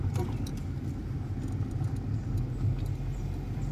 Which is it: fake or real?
real